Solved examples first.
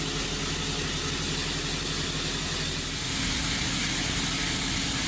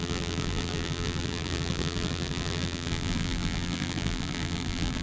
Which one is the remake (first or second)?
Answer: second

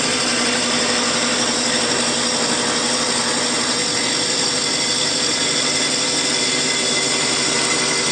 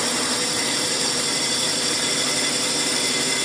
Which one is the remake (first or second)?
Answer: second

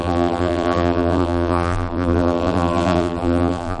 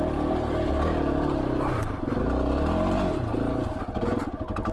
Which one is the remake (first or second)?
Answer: first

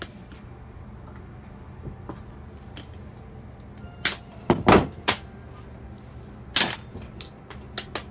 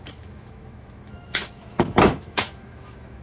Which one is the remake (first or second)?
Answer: second